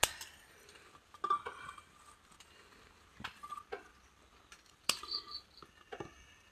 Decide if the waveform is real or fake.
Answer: real